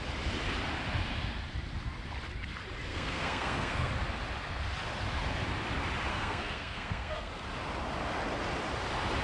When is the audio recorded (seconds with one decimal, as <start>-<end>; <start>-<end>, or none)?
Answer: 0.0-2.9; 3.9-6.1; 7.3-9.2